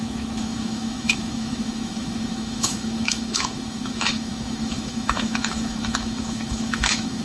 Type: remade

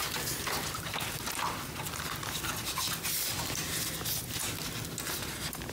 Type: recorded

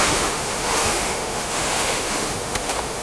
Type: remade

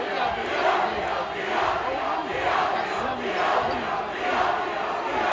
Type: recorded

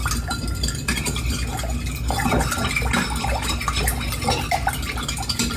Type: recorded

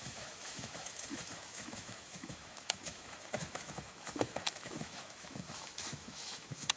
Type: remade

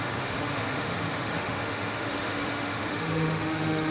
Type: remade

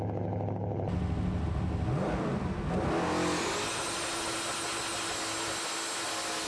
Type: recorded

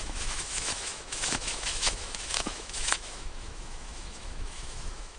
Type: remade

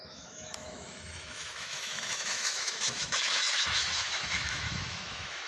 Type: remade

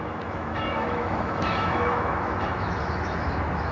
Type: remade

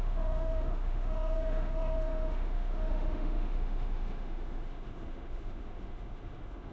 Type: remade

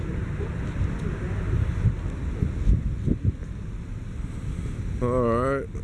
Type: recorded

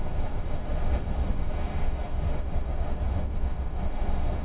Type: remade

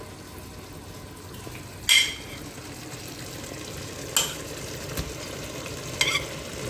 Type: recorded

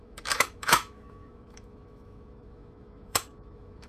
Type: remade